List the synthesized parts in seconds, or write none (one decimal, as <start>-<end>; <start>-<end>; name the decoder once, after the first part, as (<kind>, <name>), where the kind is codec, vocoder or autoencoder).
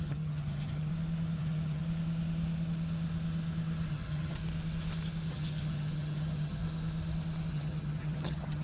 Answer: 0.0-0.9 (vocoder, HiFi-GAN); 1.4-1.8; 3.9-4.4; 5.3-6.6; 7.5-8.6